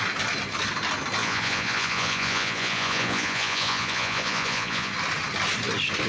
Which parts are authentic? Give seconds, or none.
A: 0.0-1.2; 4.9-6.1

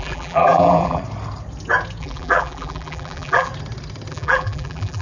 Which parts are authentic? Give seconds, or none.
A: 1.0-2.0; 3.5-4.1